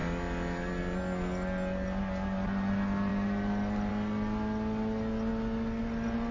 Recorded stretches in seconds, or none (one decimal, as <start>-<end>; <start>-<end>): 0.0-6.3